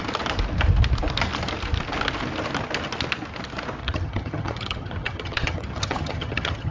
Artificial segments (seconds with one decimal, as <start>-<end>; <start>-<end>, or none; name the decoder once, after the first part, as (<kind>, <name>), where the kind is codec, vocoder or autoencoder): 3.8-6.7 (vocoder, HiFi-GAN)